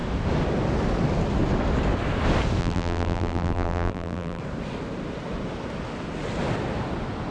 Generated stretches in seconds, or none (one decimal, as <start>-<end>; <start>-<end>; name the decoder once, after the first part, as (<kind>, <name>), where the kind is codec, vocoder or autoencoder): 2.6-4.4 (vocoder, BigVGAN v2)